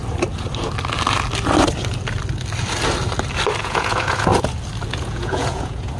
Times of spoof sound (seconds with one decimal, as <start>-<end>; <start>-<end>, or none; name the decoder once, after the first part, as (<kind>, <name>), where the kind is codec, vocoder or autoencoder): 3.6-4.3 (vocoder, Vocos); 4.9-6.0